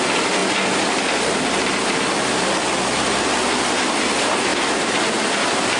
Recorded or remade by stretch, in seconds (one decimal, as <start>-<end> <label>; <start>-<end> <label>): 0.0-5.8 recorded